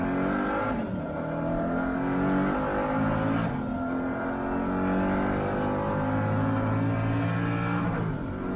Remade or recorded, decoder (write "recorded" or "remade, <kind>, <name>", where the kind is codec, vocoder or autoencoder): recorded